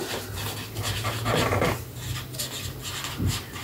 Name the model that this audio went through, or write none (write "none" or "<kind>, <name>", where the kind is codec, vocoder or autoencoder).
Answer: none